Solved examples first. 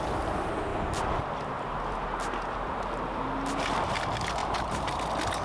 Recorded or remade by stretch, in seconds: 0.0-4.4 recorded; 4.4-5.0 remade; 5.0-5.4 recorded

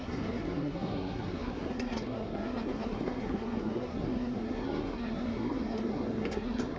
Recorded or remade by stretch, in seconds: 0.0-6.8 remade

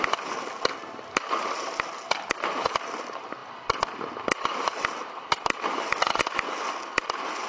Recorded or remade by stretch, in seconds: 0.0-7.5 recorded

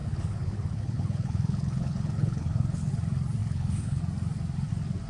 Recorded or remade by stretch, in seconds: 0.0-2.9 remade; 2.9-3.4 recorded; 3.4-4.0 remade; 4.0-5.1 recorded

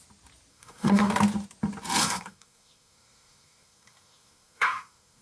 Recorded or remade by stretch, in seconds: 0.0-0.5 recorded; 0.5-1.1 remade; 1.1-2.0 recorded; 2.0-5.2 remade

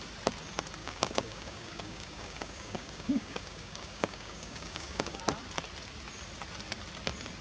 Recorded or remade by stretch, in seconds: 0.0-0.8 recorded; 0.8-5.2 remade; 5.2-7.4 recorded